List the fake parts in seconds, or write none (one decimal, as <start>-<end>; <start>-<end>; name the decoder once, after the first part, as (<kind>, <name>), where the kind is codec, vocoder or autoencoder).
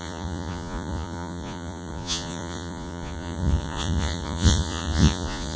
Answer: 0.0-5.6 (vocoder, Vocos)